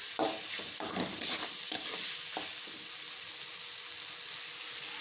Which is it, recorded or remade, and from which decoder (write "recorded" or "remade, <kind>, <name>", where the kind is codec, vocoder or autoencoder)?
recorded